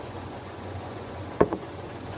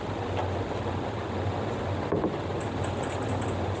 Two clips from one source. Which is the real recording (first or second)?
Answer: second